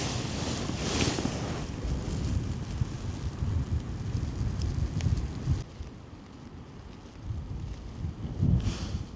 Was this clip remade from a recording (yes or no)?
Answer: no